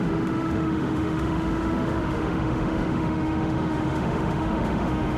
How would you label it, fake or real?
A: fake